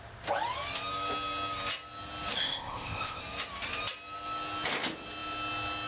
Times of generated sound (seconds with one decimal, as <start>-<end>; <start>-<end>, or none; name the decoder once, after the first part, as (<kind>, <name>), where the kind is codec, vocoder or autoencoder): 2.4-3.2 (codec, ZipCodec)